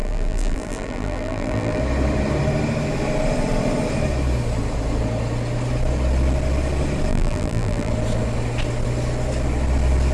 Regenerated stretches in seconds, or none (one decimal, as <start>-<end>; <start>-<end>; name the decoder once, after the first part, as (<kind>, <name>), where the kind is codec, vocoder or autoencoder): 0.0-1.8 (vocoder, BigVGAN v2); 7.1-7.9